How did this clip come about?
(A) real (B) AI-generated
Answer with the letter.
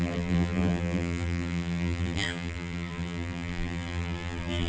B